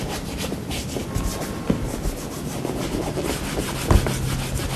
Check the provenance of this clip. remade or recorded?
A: recorded